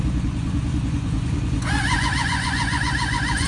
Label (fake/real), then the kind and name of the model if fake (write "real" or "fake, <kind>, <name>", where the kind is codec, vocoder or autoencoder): fake, vocoder, Vocos